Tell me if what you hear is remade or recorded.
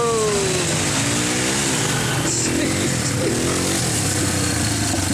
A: recorded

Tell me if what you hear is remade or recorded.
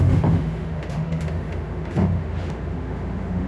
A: remade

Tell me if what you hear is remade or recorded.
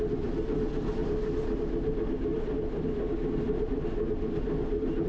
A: recorded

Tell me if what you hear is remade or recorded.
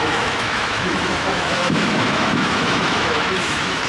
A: remade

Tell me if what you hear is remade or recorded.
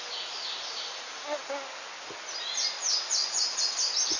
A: recorded